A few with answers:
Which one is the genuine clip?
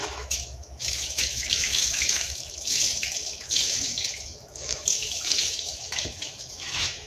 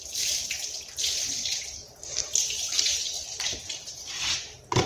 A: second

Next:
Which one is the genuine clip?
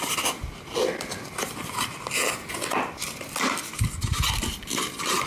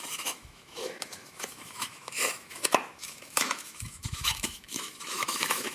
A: first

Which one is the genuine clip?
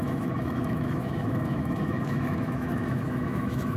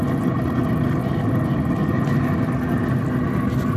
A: second